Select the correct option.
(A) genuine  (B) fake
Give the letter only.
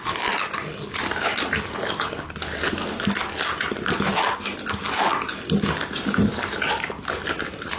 A